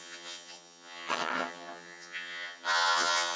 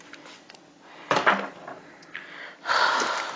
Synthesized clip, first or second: first